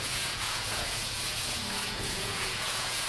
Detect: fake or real fake